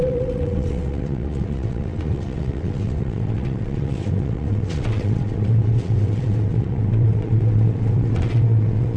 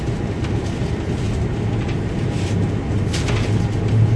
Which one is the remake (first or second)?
first